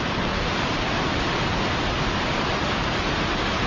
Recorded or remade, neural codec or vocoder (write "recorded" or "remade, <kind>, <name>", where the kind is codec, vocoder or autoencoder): recorded